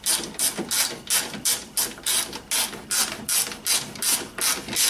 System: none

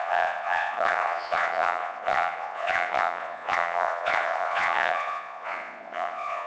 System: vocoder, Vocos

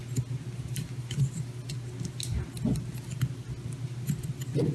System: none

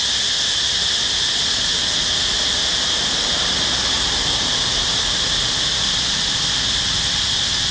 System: none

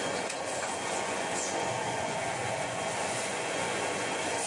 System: vocoder, Vocos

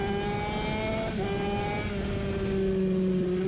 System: none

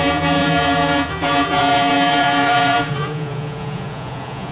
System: vocoder, Vocos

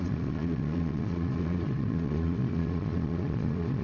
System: vocoder, Vocos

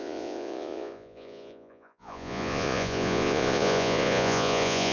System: vocoder, Vocos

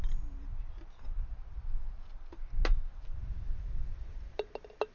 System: none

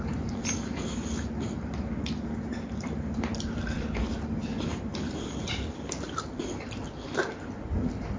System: none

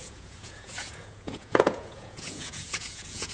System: vocoder, Vocos